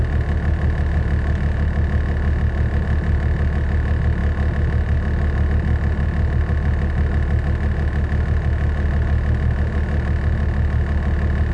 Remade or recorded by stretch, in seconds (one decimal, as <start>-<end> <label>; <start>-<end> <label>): 0.0-11.5 recorded

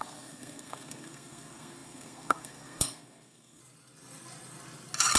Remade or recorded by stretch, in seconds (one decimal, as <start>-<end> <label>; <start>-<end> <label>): 0.0-3.6 remade; 3.6-5.2 recorded

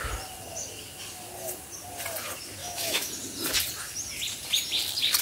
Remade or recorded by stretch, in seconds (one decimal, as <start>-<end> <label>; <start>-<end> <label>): 0.0-2.6 recorded; 2.6-3.1 remade; 3.1-5.2 recorded

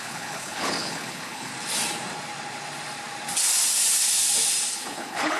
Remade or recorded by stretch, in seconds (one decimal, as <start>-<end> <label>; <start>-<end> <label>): 0.0-1.5 remade; 1.5-4.7 recorded; 4.7-5.4 remade